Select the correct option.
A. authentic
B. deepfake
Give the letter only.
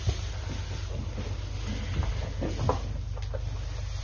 A